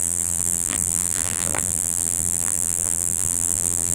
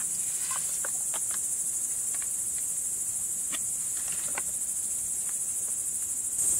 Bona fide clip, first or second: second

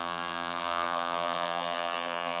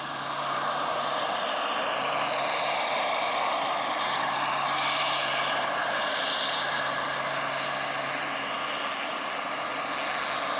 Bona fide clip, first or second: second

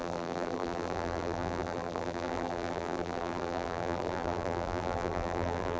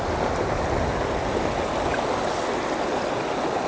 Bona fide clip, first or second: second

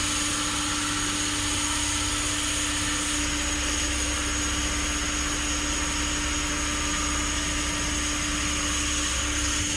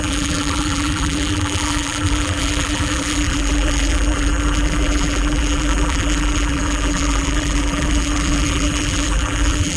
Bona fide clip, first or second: first